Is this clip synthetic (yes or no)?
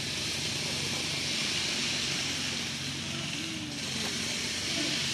no